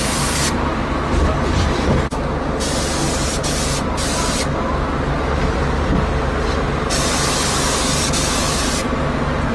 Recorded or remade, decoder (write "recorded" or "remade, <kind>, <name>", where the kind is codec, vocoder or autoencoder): recorded